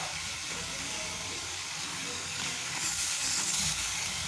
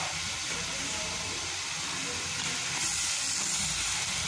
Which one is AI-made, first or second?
first